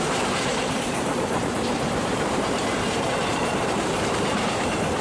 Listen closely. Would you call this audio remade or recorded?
remade